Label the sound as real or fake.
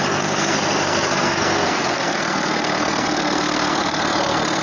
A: fake